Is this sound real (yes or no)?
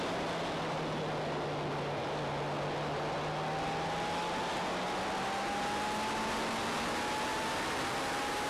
yes